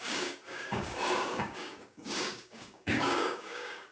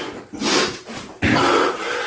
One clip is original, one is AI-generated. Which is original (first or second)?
second